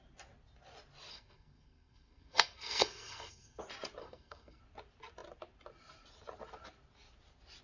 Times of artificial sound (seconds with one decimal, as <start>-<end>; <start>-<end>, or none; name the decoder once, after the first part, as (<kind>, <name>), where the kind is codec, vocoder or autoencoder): 1.1-3.6 (codec, SNAC); 4.0-4.6